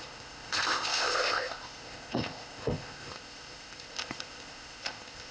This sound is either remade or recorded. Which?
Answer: remade